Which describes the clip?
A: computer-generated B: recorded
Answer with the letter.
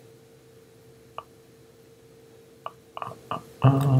B